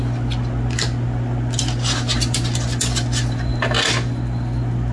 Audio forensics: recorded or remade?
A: recorded